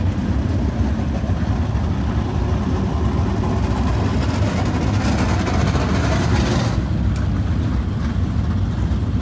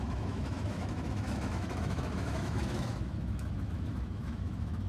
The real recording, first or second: first